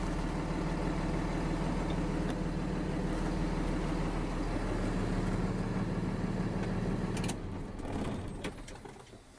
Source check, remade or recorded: recorded